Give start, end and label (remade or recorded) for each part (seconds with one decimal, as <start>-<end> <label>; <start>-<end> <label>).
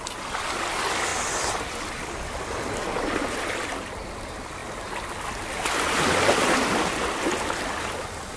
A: 0.0-8.4 recorded